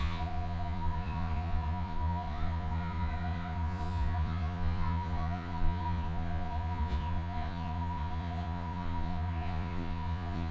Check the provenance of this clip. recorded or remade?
remade